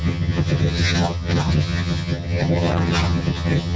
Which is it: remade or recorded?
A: remade